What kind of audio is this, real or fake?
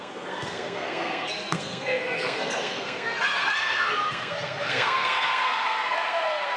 fake